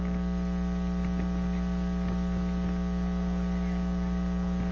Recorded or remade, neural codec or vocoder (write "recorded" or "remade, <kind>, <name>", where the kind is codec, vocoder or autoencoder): recorded